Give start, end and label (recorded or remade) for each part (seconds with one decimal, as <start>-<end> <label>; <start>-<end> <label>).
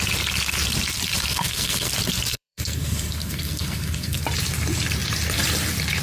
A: 0.0-1.3 recorded; 1.3-1.9 remade; 1.9-2.3 recorded; 2.3-4.2 remade; 4.2-6.0 recorded